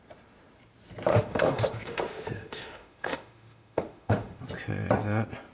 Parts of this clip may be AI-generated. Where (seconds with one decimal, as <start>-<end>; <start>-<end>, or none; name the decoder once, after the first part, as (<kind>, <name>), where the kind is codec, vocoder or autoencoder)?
1.1-4.4 (autoencoder, DAC-VAE)